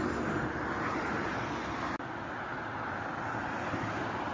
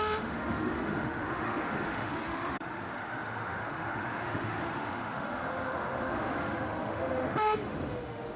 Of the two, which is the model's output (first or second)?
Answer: second